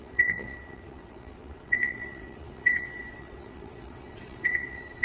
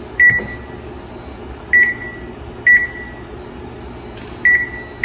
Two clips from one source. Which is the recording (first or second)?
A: second